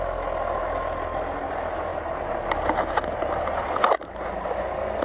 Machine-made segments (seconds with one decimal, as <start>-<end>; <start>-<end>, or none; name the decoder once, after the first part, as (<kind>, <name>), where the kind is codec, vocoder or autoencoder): none